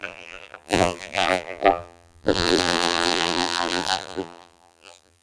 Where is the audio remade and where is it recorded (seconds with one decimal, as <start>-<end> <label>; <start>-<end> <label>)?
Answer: 0.0-5.2 remade

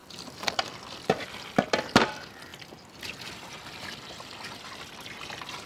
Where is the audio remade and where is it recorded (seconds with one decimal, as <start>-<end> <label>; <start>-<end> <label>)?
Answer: 0.0-0.7 remade; 0.7-5.7 recorded